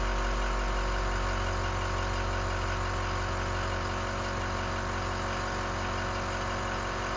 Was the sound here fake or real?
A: real